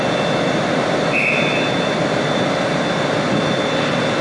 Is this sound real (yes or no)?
yes